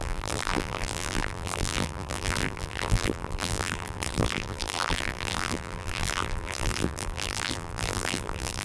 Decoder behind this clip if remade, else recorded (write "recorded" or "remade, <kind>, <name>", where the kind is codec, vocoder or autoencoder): remade, vocoder, BigVGAN v2